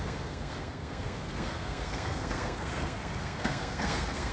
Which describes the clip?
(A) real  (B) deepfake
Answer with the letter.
B